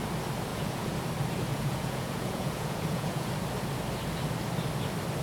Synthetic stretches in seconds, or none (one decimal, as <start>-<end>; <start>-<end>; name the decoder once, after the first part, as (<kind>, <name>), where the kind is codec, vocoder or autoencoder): 0.5-1.0 (vocoder, Vocos); 1.5-3.3